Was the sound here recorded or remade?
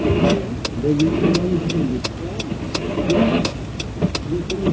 recorded